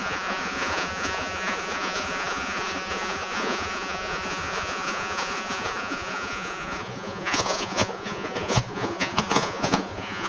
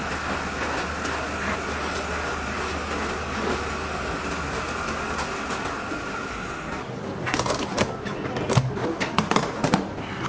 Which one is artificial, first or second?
first